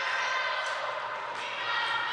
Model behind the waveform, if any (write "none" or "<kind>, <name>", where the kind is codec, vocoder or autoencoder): none